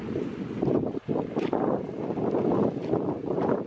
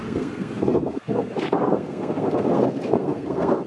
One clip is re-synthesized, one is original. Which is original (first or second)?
first